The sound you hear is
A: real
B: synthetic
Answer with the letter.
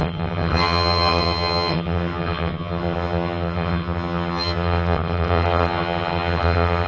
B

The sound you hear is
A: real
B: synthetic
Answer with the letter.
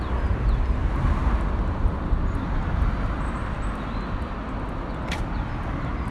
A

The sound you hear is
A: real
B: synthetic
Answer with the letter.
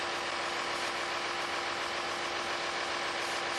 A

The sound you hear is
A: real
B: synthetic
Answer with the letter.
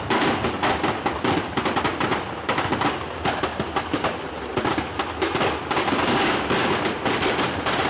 A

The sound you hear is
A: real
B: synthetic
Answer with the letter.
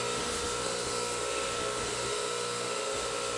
B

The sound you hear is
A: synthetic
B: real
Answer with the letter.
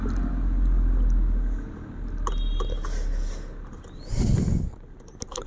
B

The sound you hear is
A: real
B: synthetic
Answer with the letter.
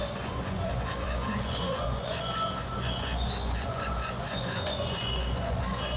B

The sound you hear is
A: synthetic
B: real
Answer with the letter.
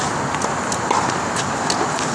B